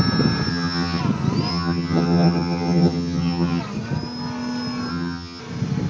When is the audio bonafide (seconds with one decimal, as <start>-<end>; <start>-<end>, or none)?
0.0-0.5; 1.0-1.5; 3.6-4.9; 5.4-5.9